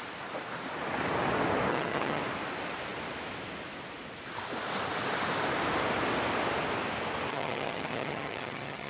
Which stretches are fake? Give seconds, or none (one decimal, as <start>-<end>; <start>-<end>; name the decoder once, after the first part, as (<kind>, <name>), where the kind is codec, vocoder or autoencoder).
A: 1.7-2.2 (vocoder, HiFi-GAN); 7.3-8.9